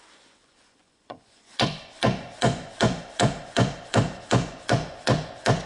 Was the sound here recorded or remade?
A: remade